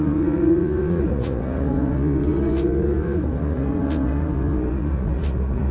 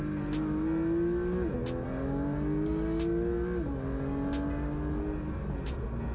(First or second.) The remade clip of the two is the first